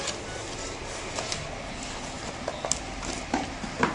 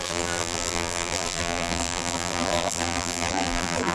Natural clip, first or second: first